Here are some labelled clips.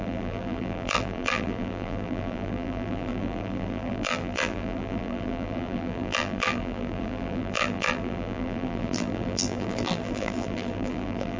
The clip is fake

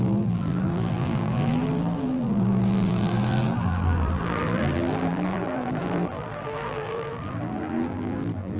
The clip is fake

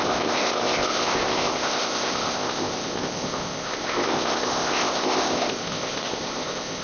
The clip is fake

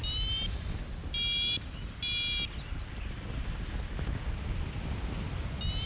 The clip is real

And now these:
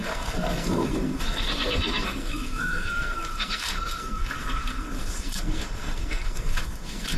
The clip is fake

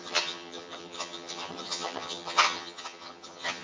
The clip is fake